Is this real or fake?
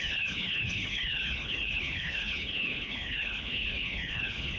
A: fake